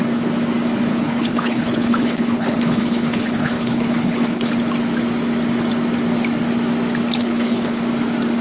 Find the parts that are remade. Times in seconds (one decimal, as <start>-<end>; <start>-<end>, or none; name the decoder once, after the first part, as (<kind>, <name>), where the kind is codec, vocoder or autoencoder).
0.9-4.5 (codec, HILCodec); 7.2-7.8